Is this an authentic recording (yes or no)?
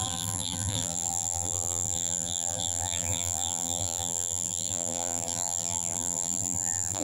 no